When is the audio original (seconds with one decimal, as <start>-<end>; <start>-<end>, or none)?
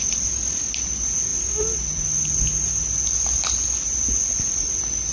0.0-5.1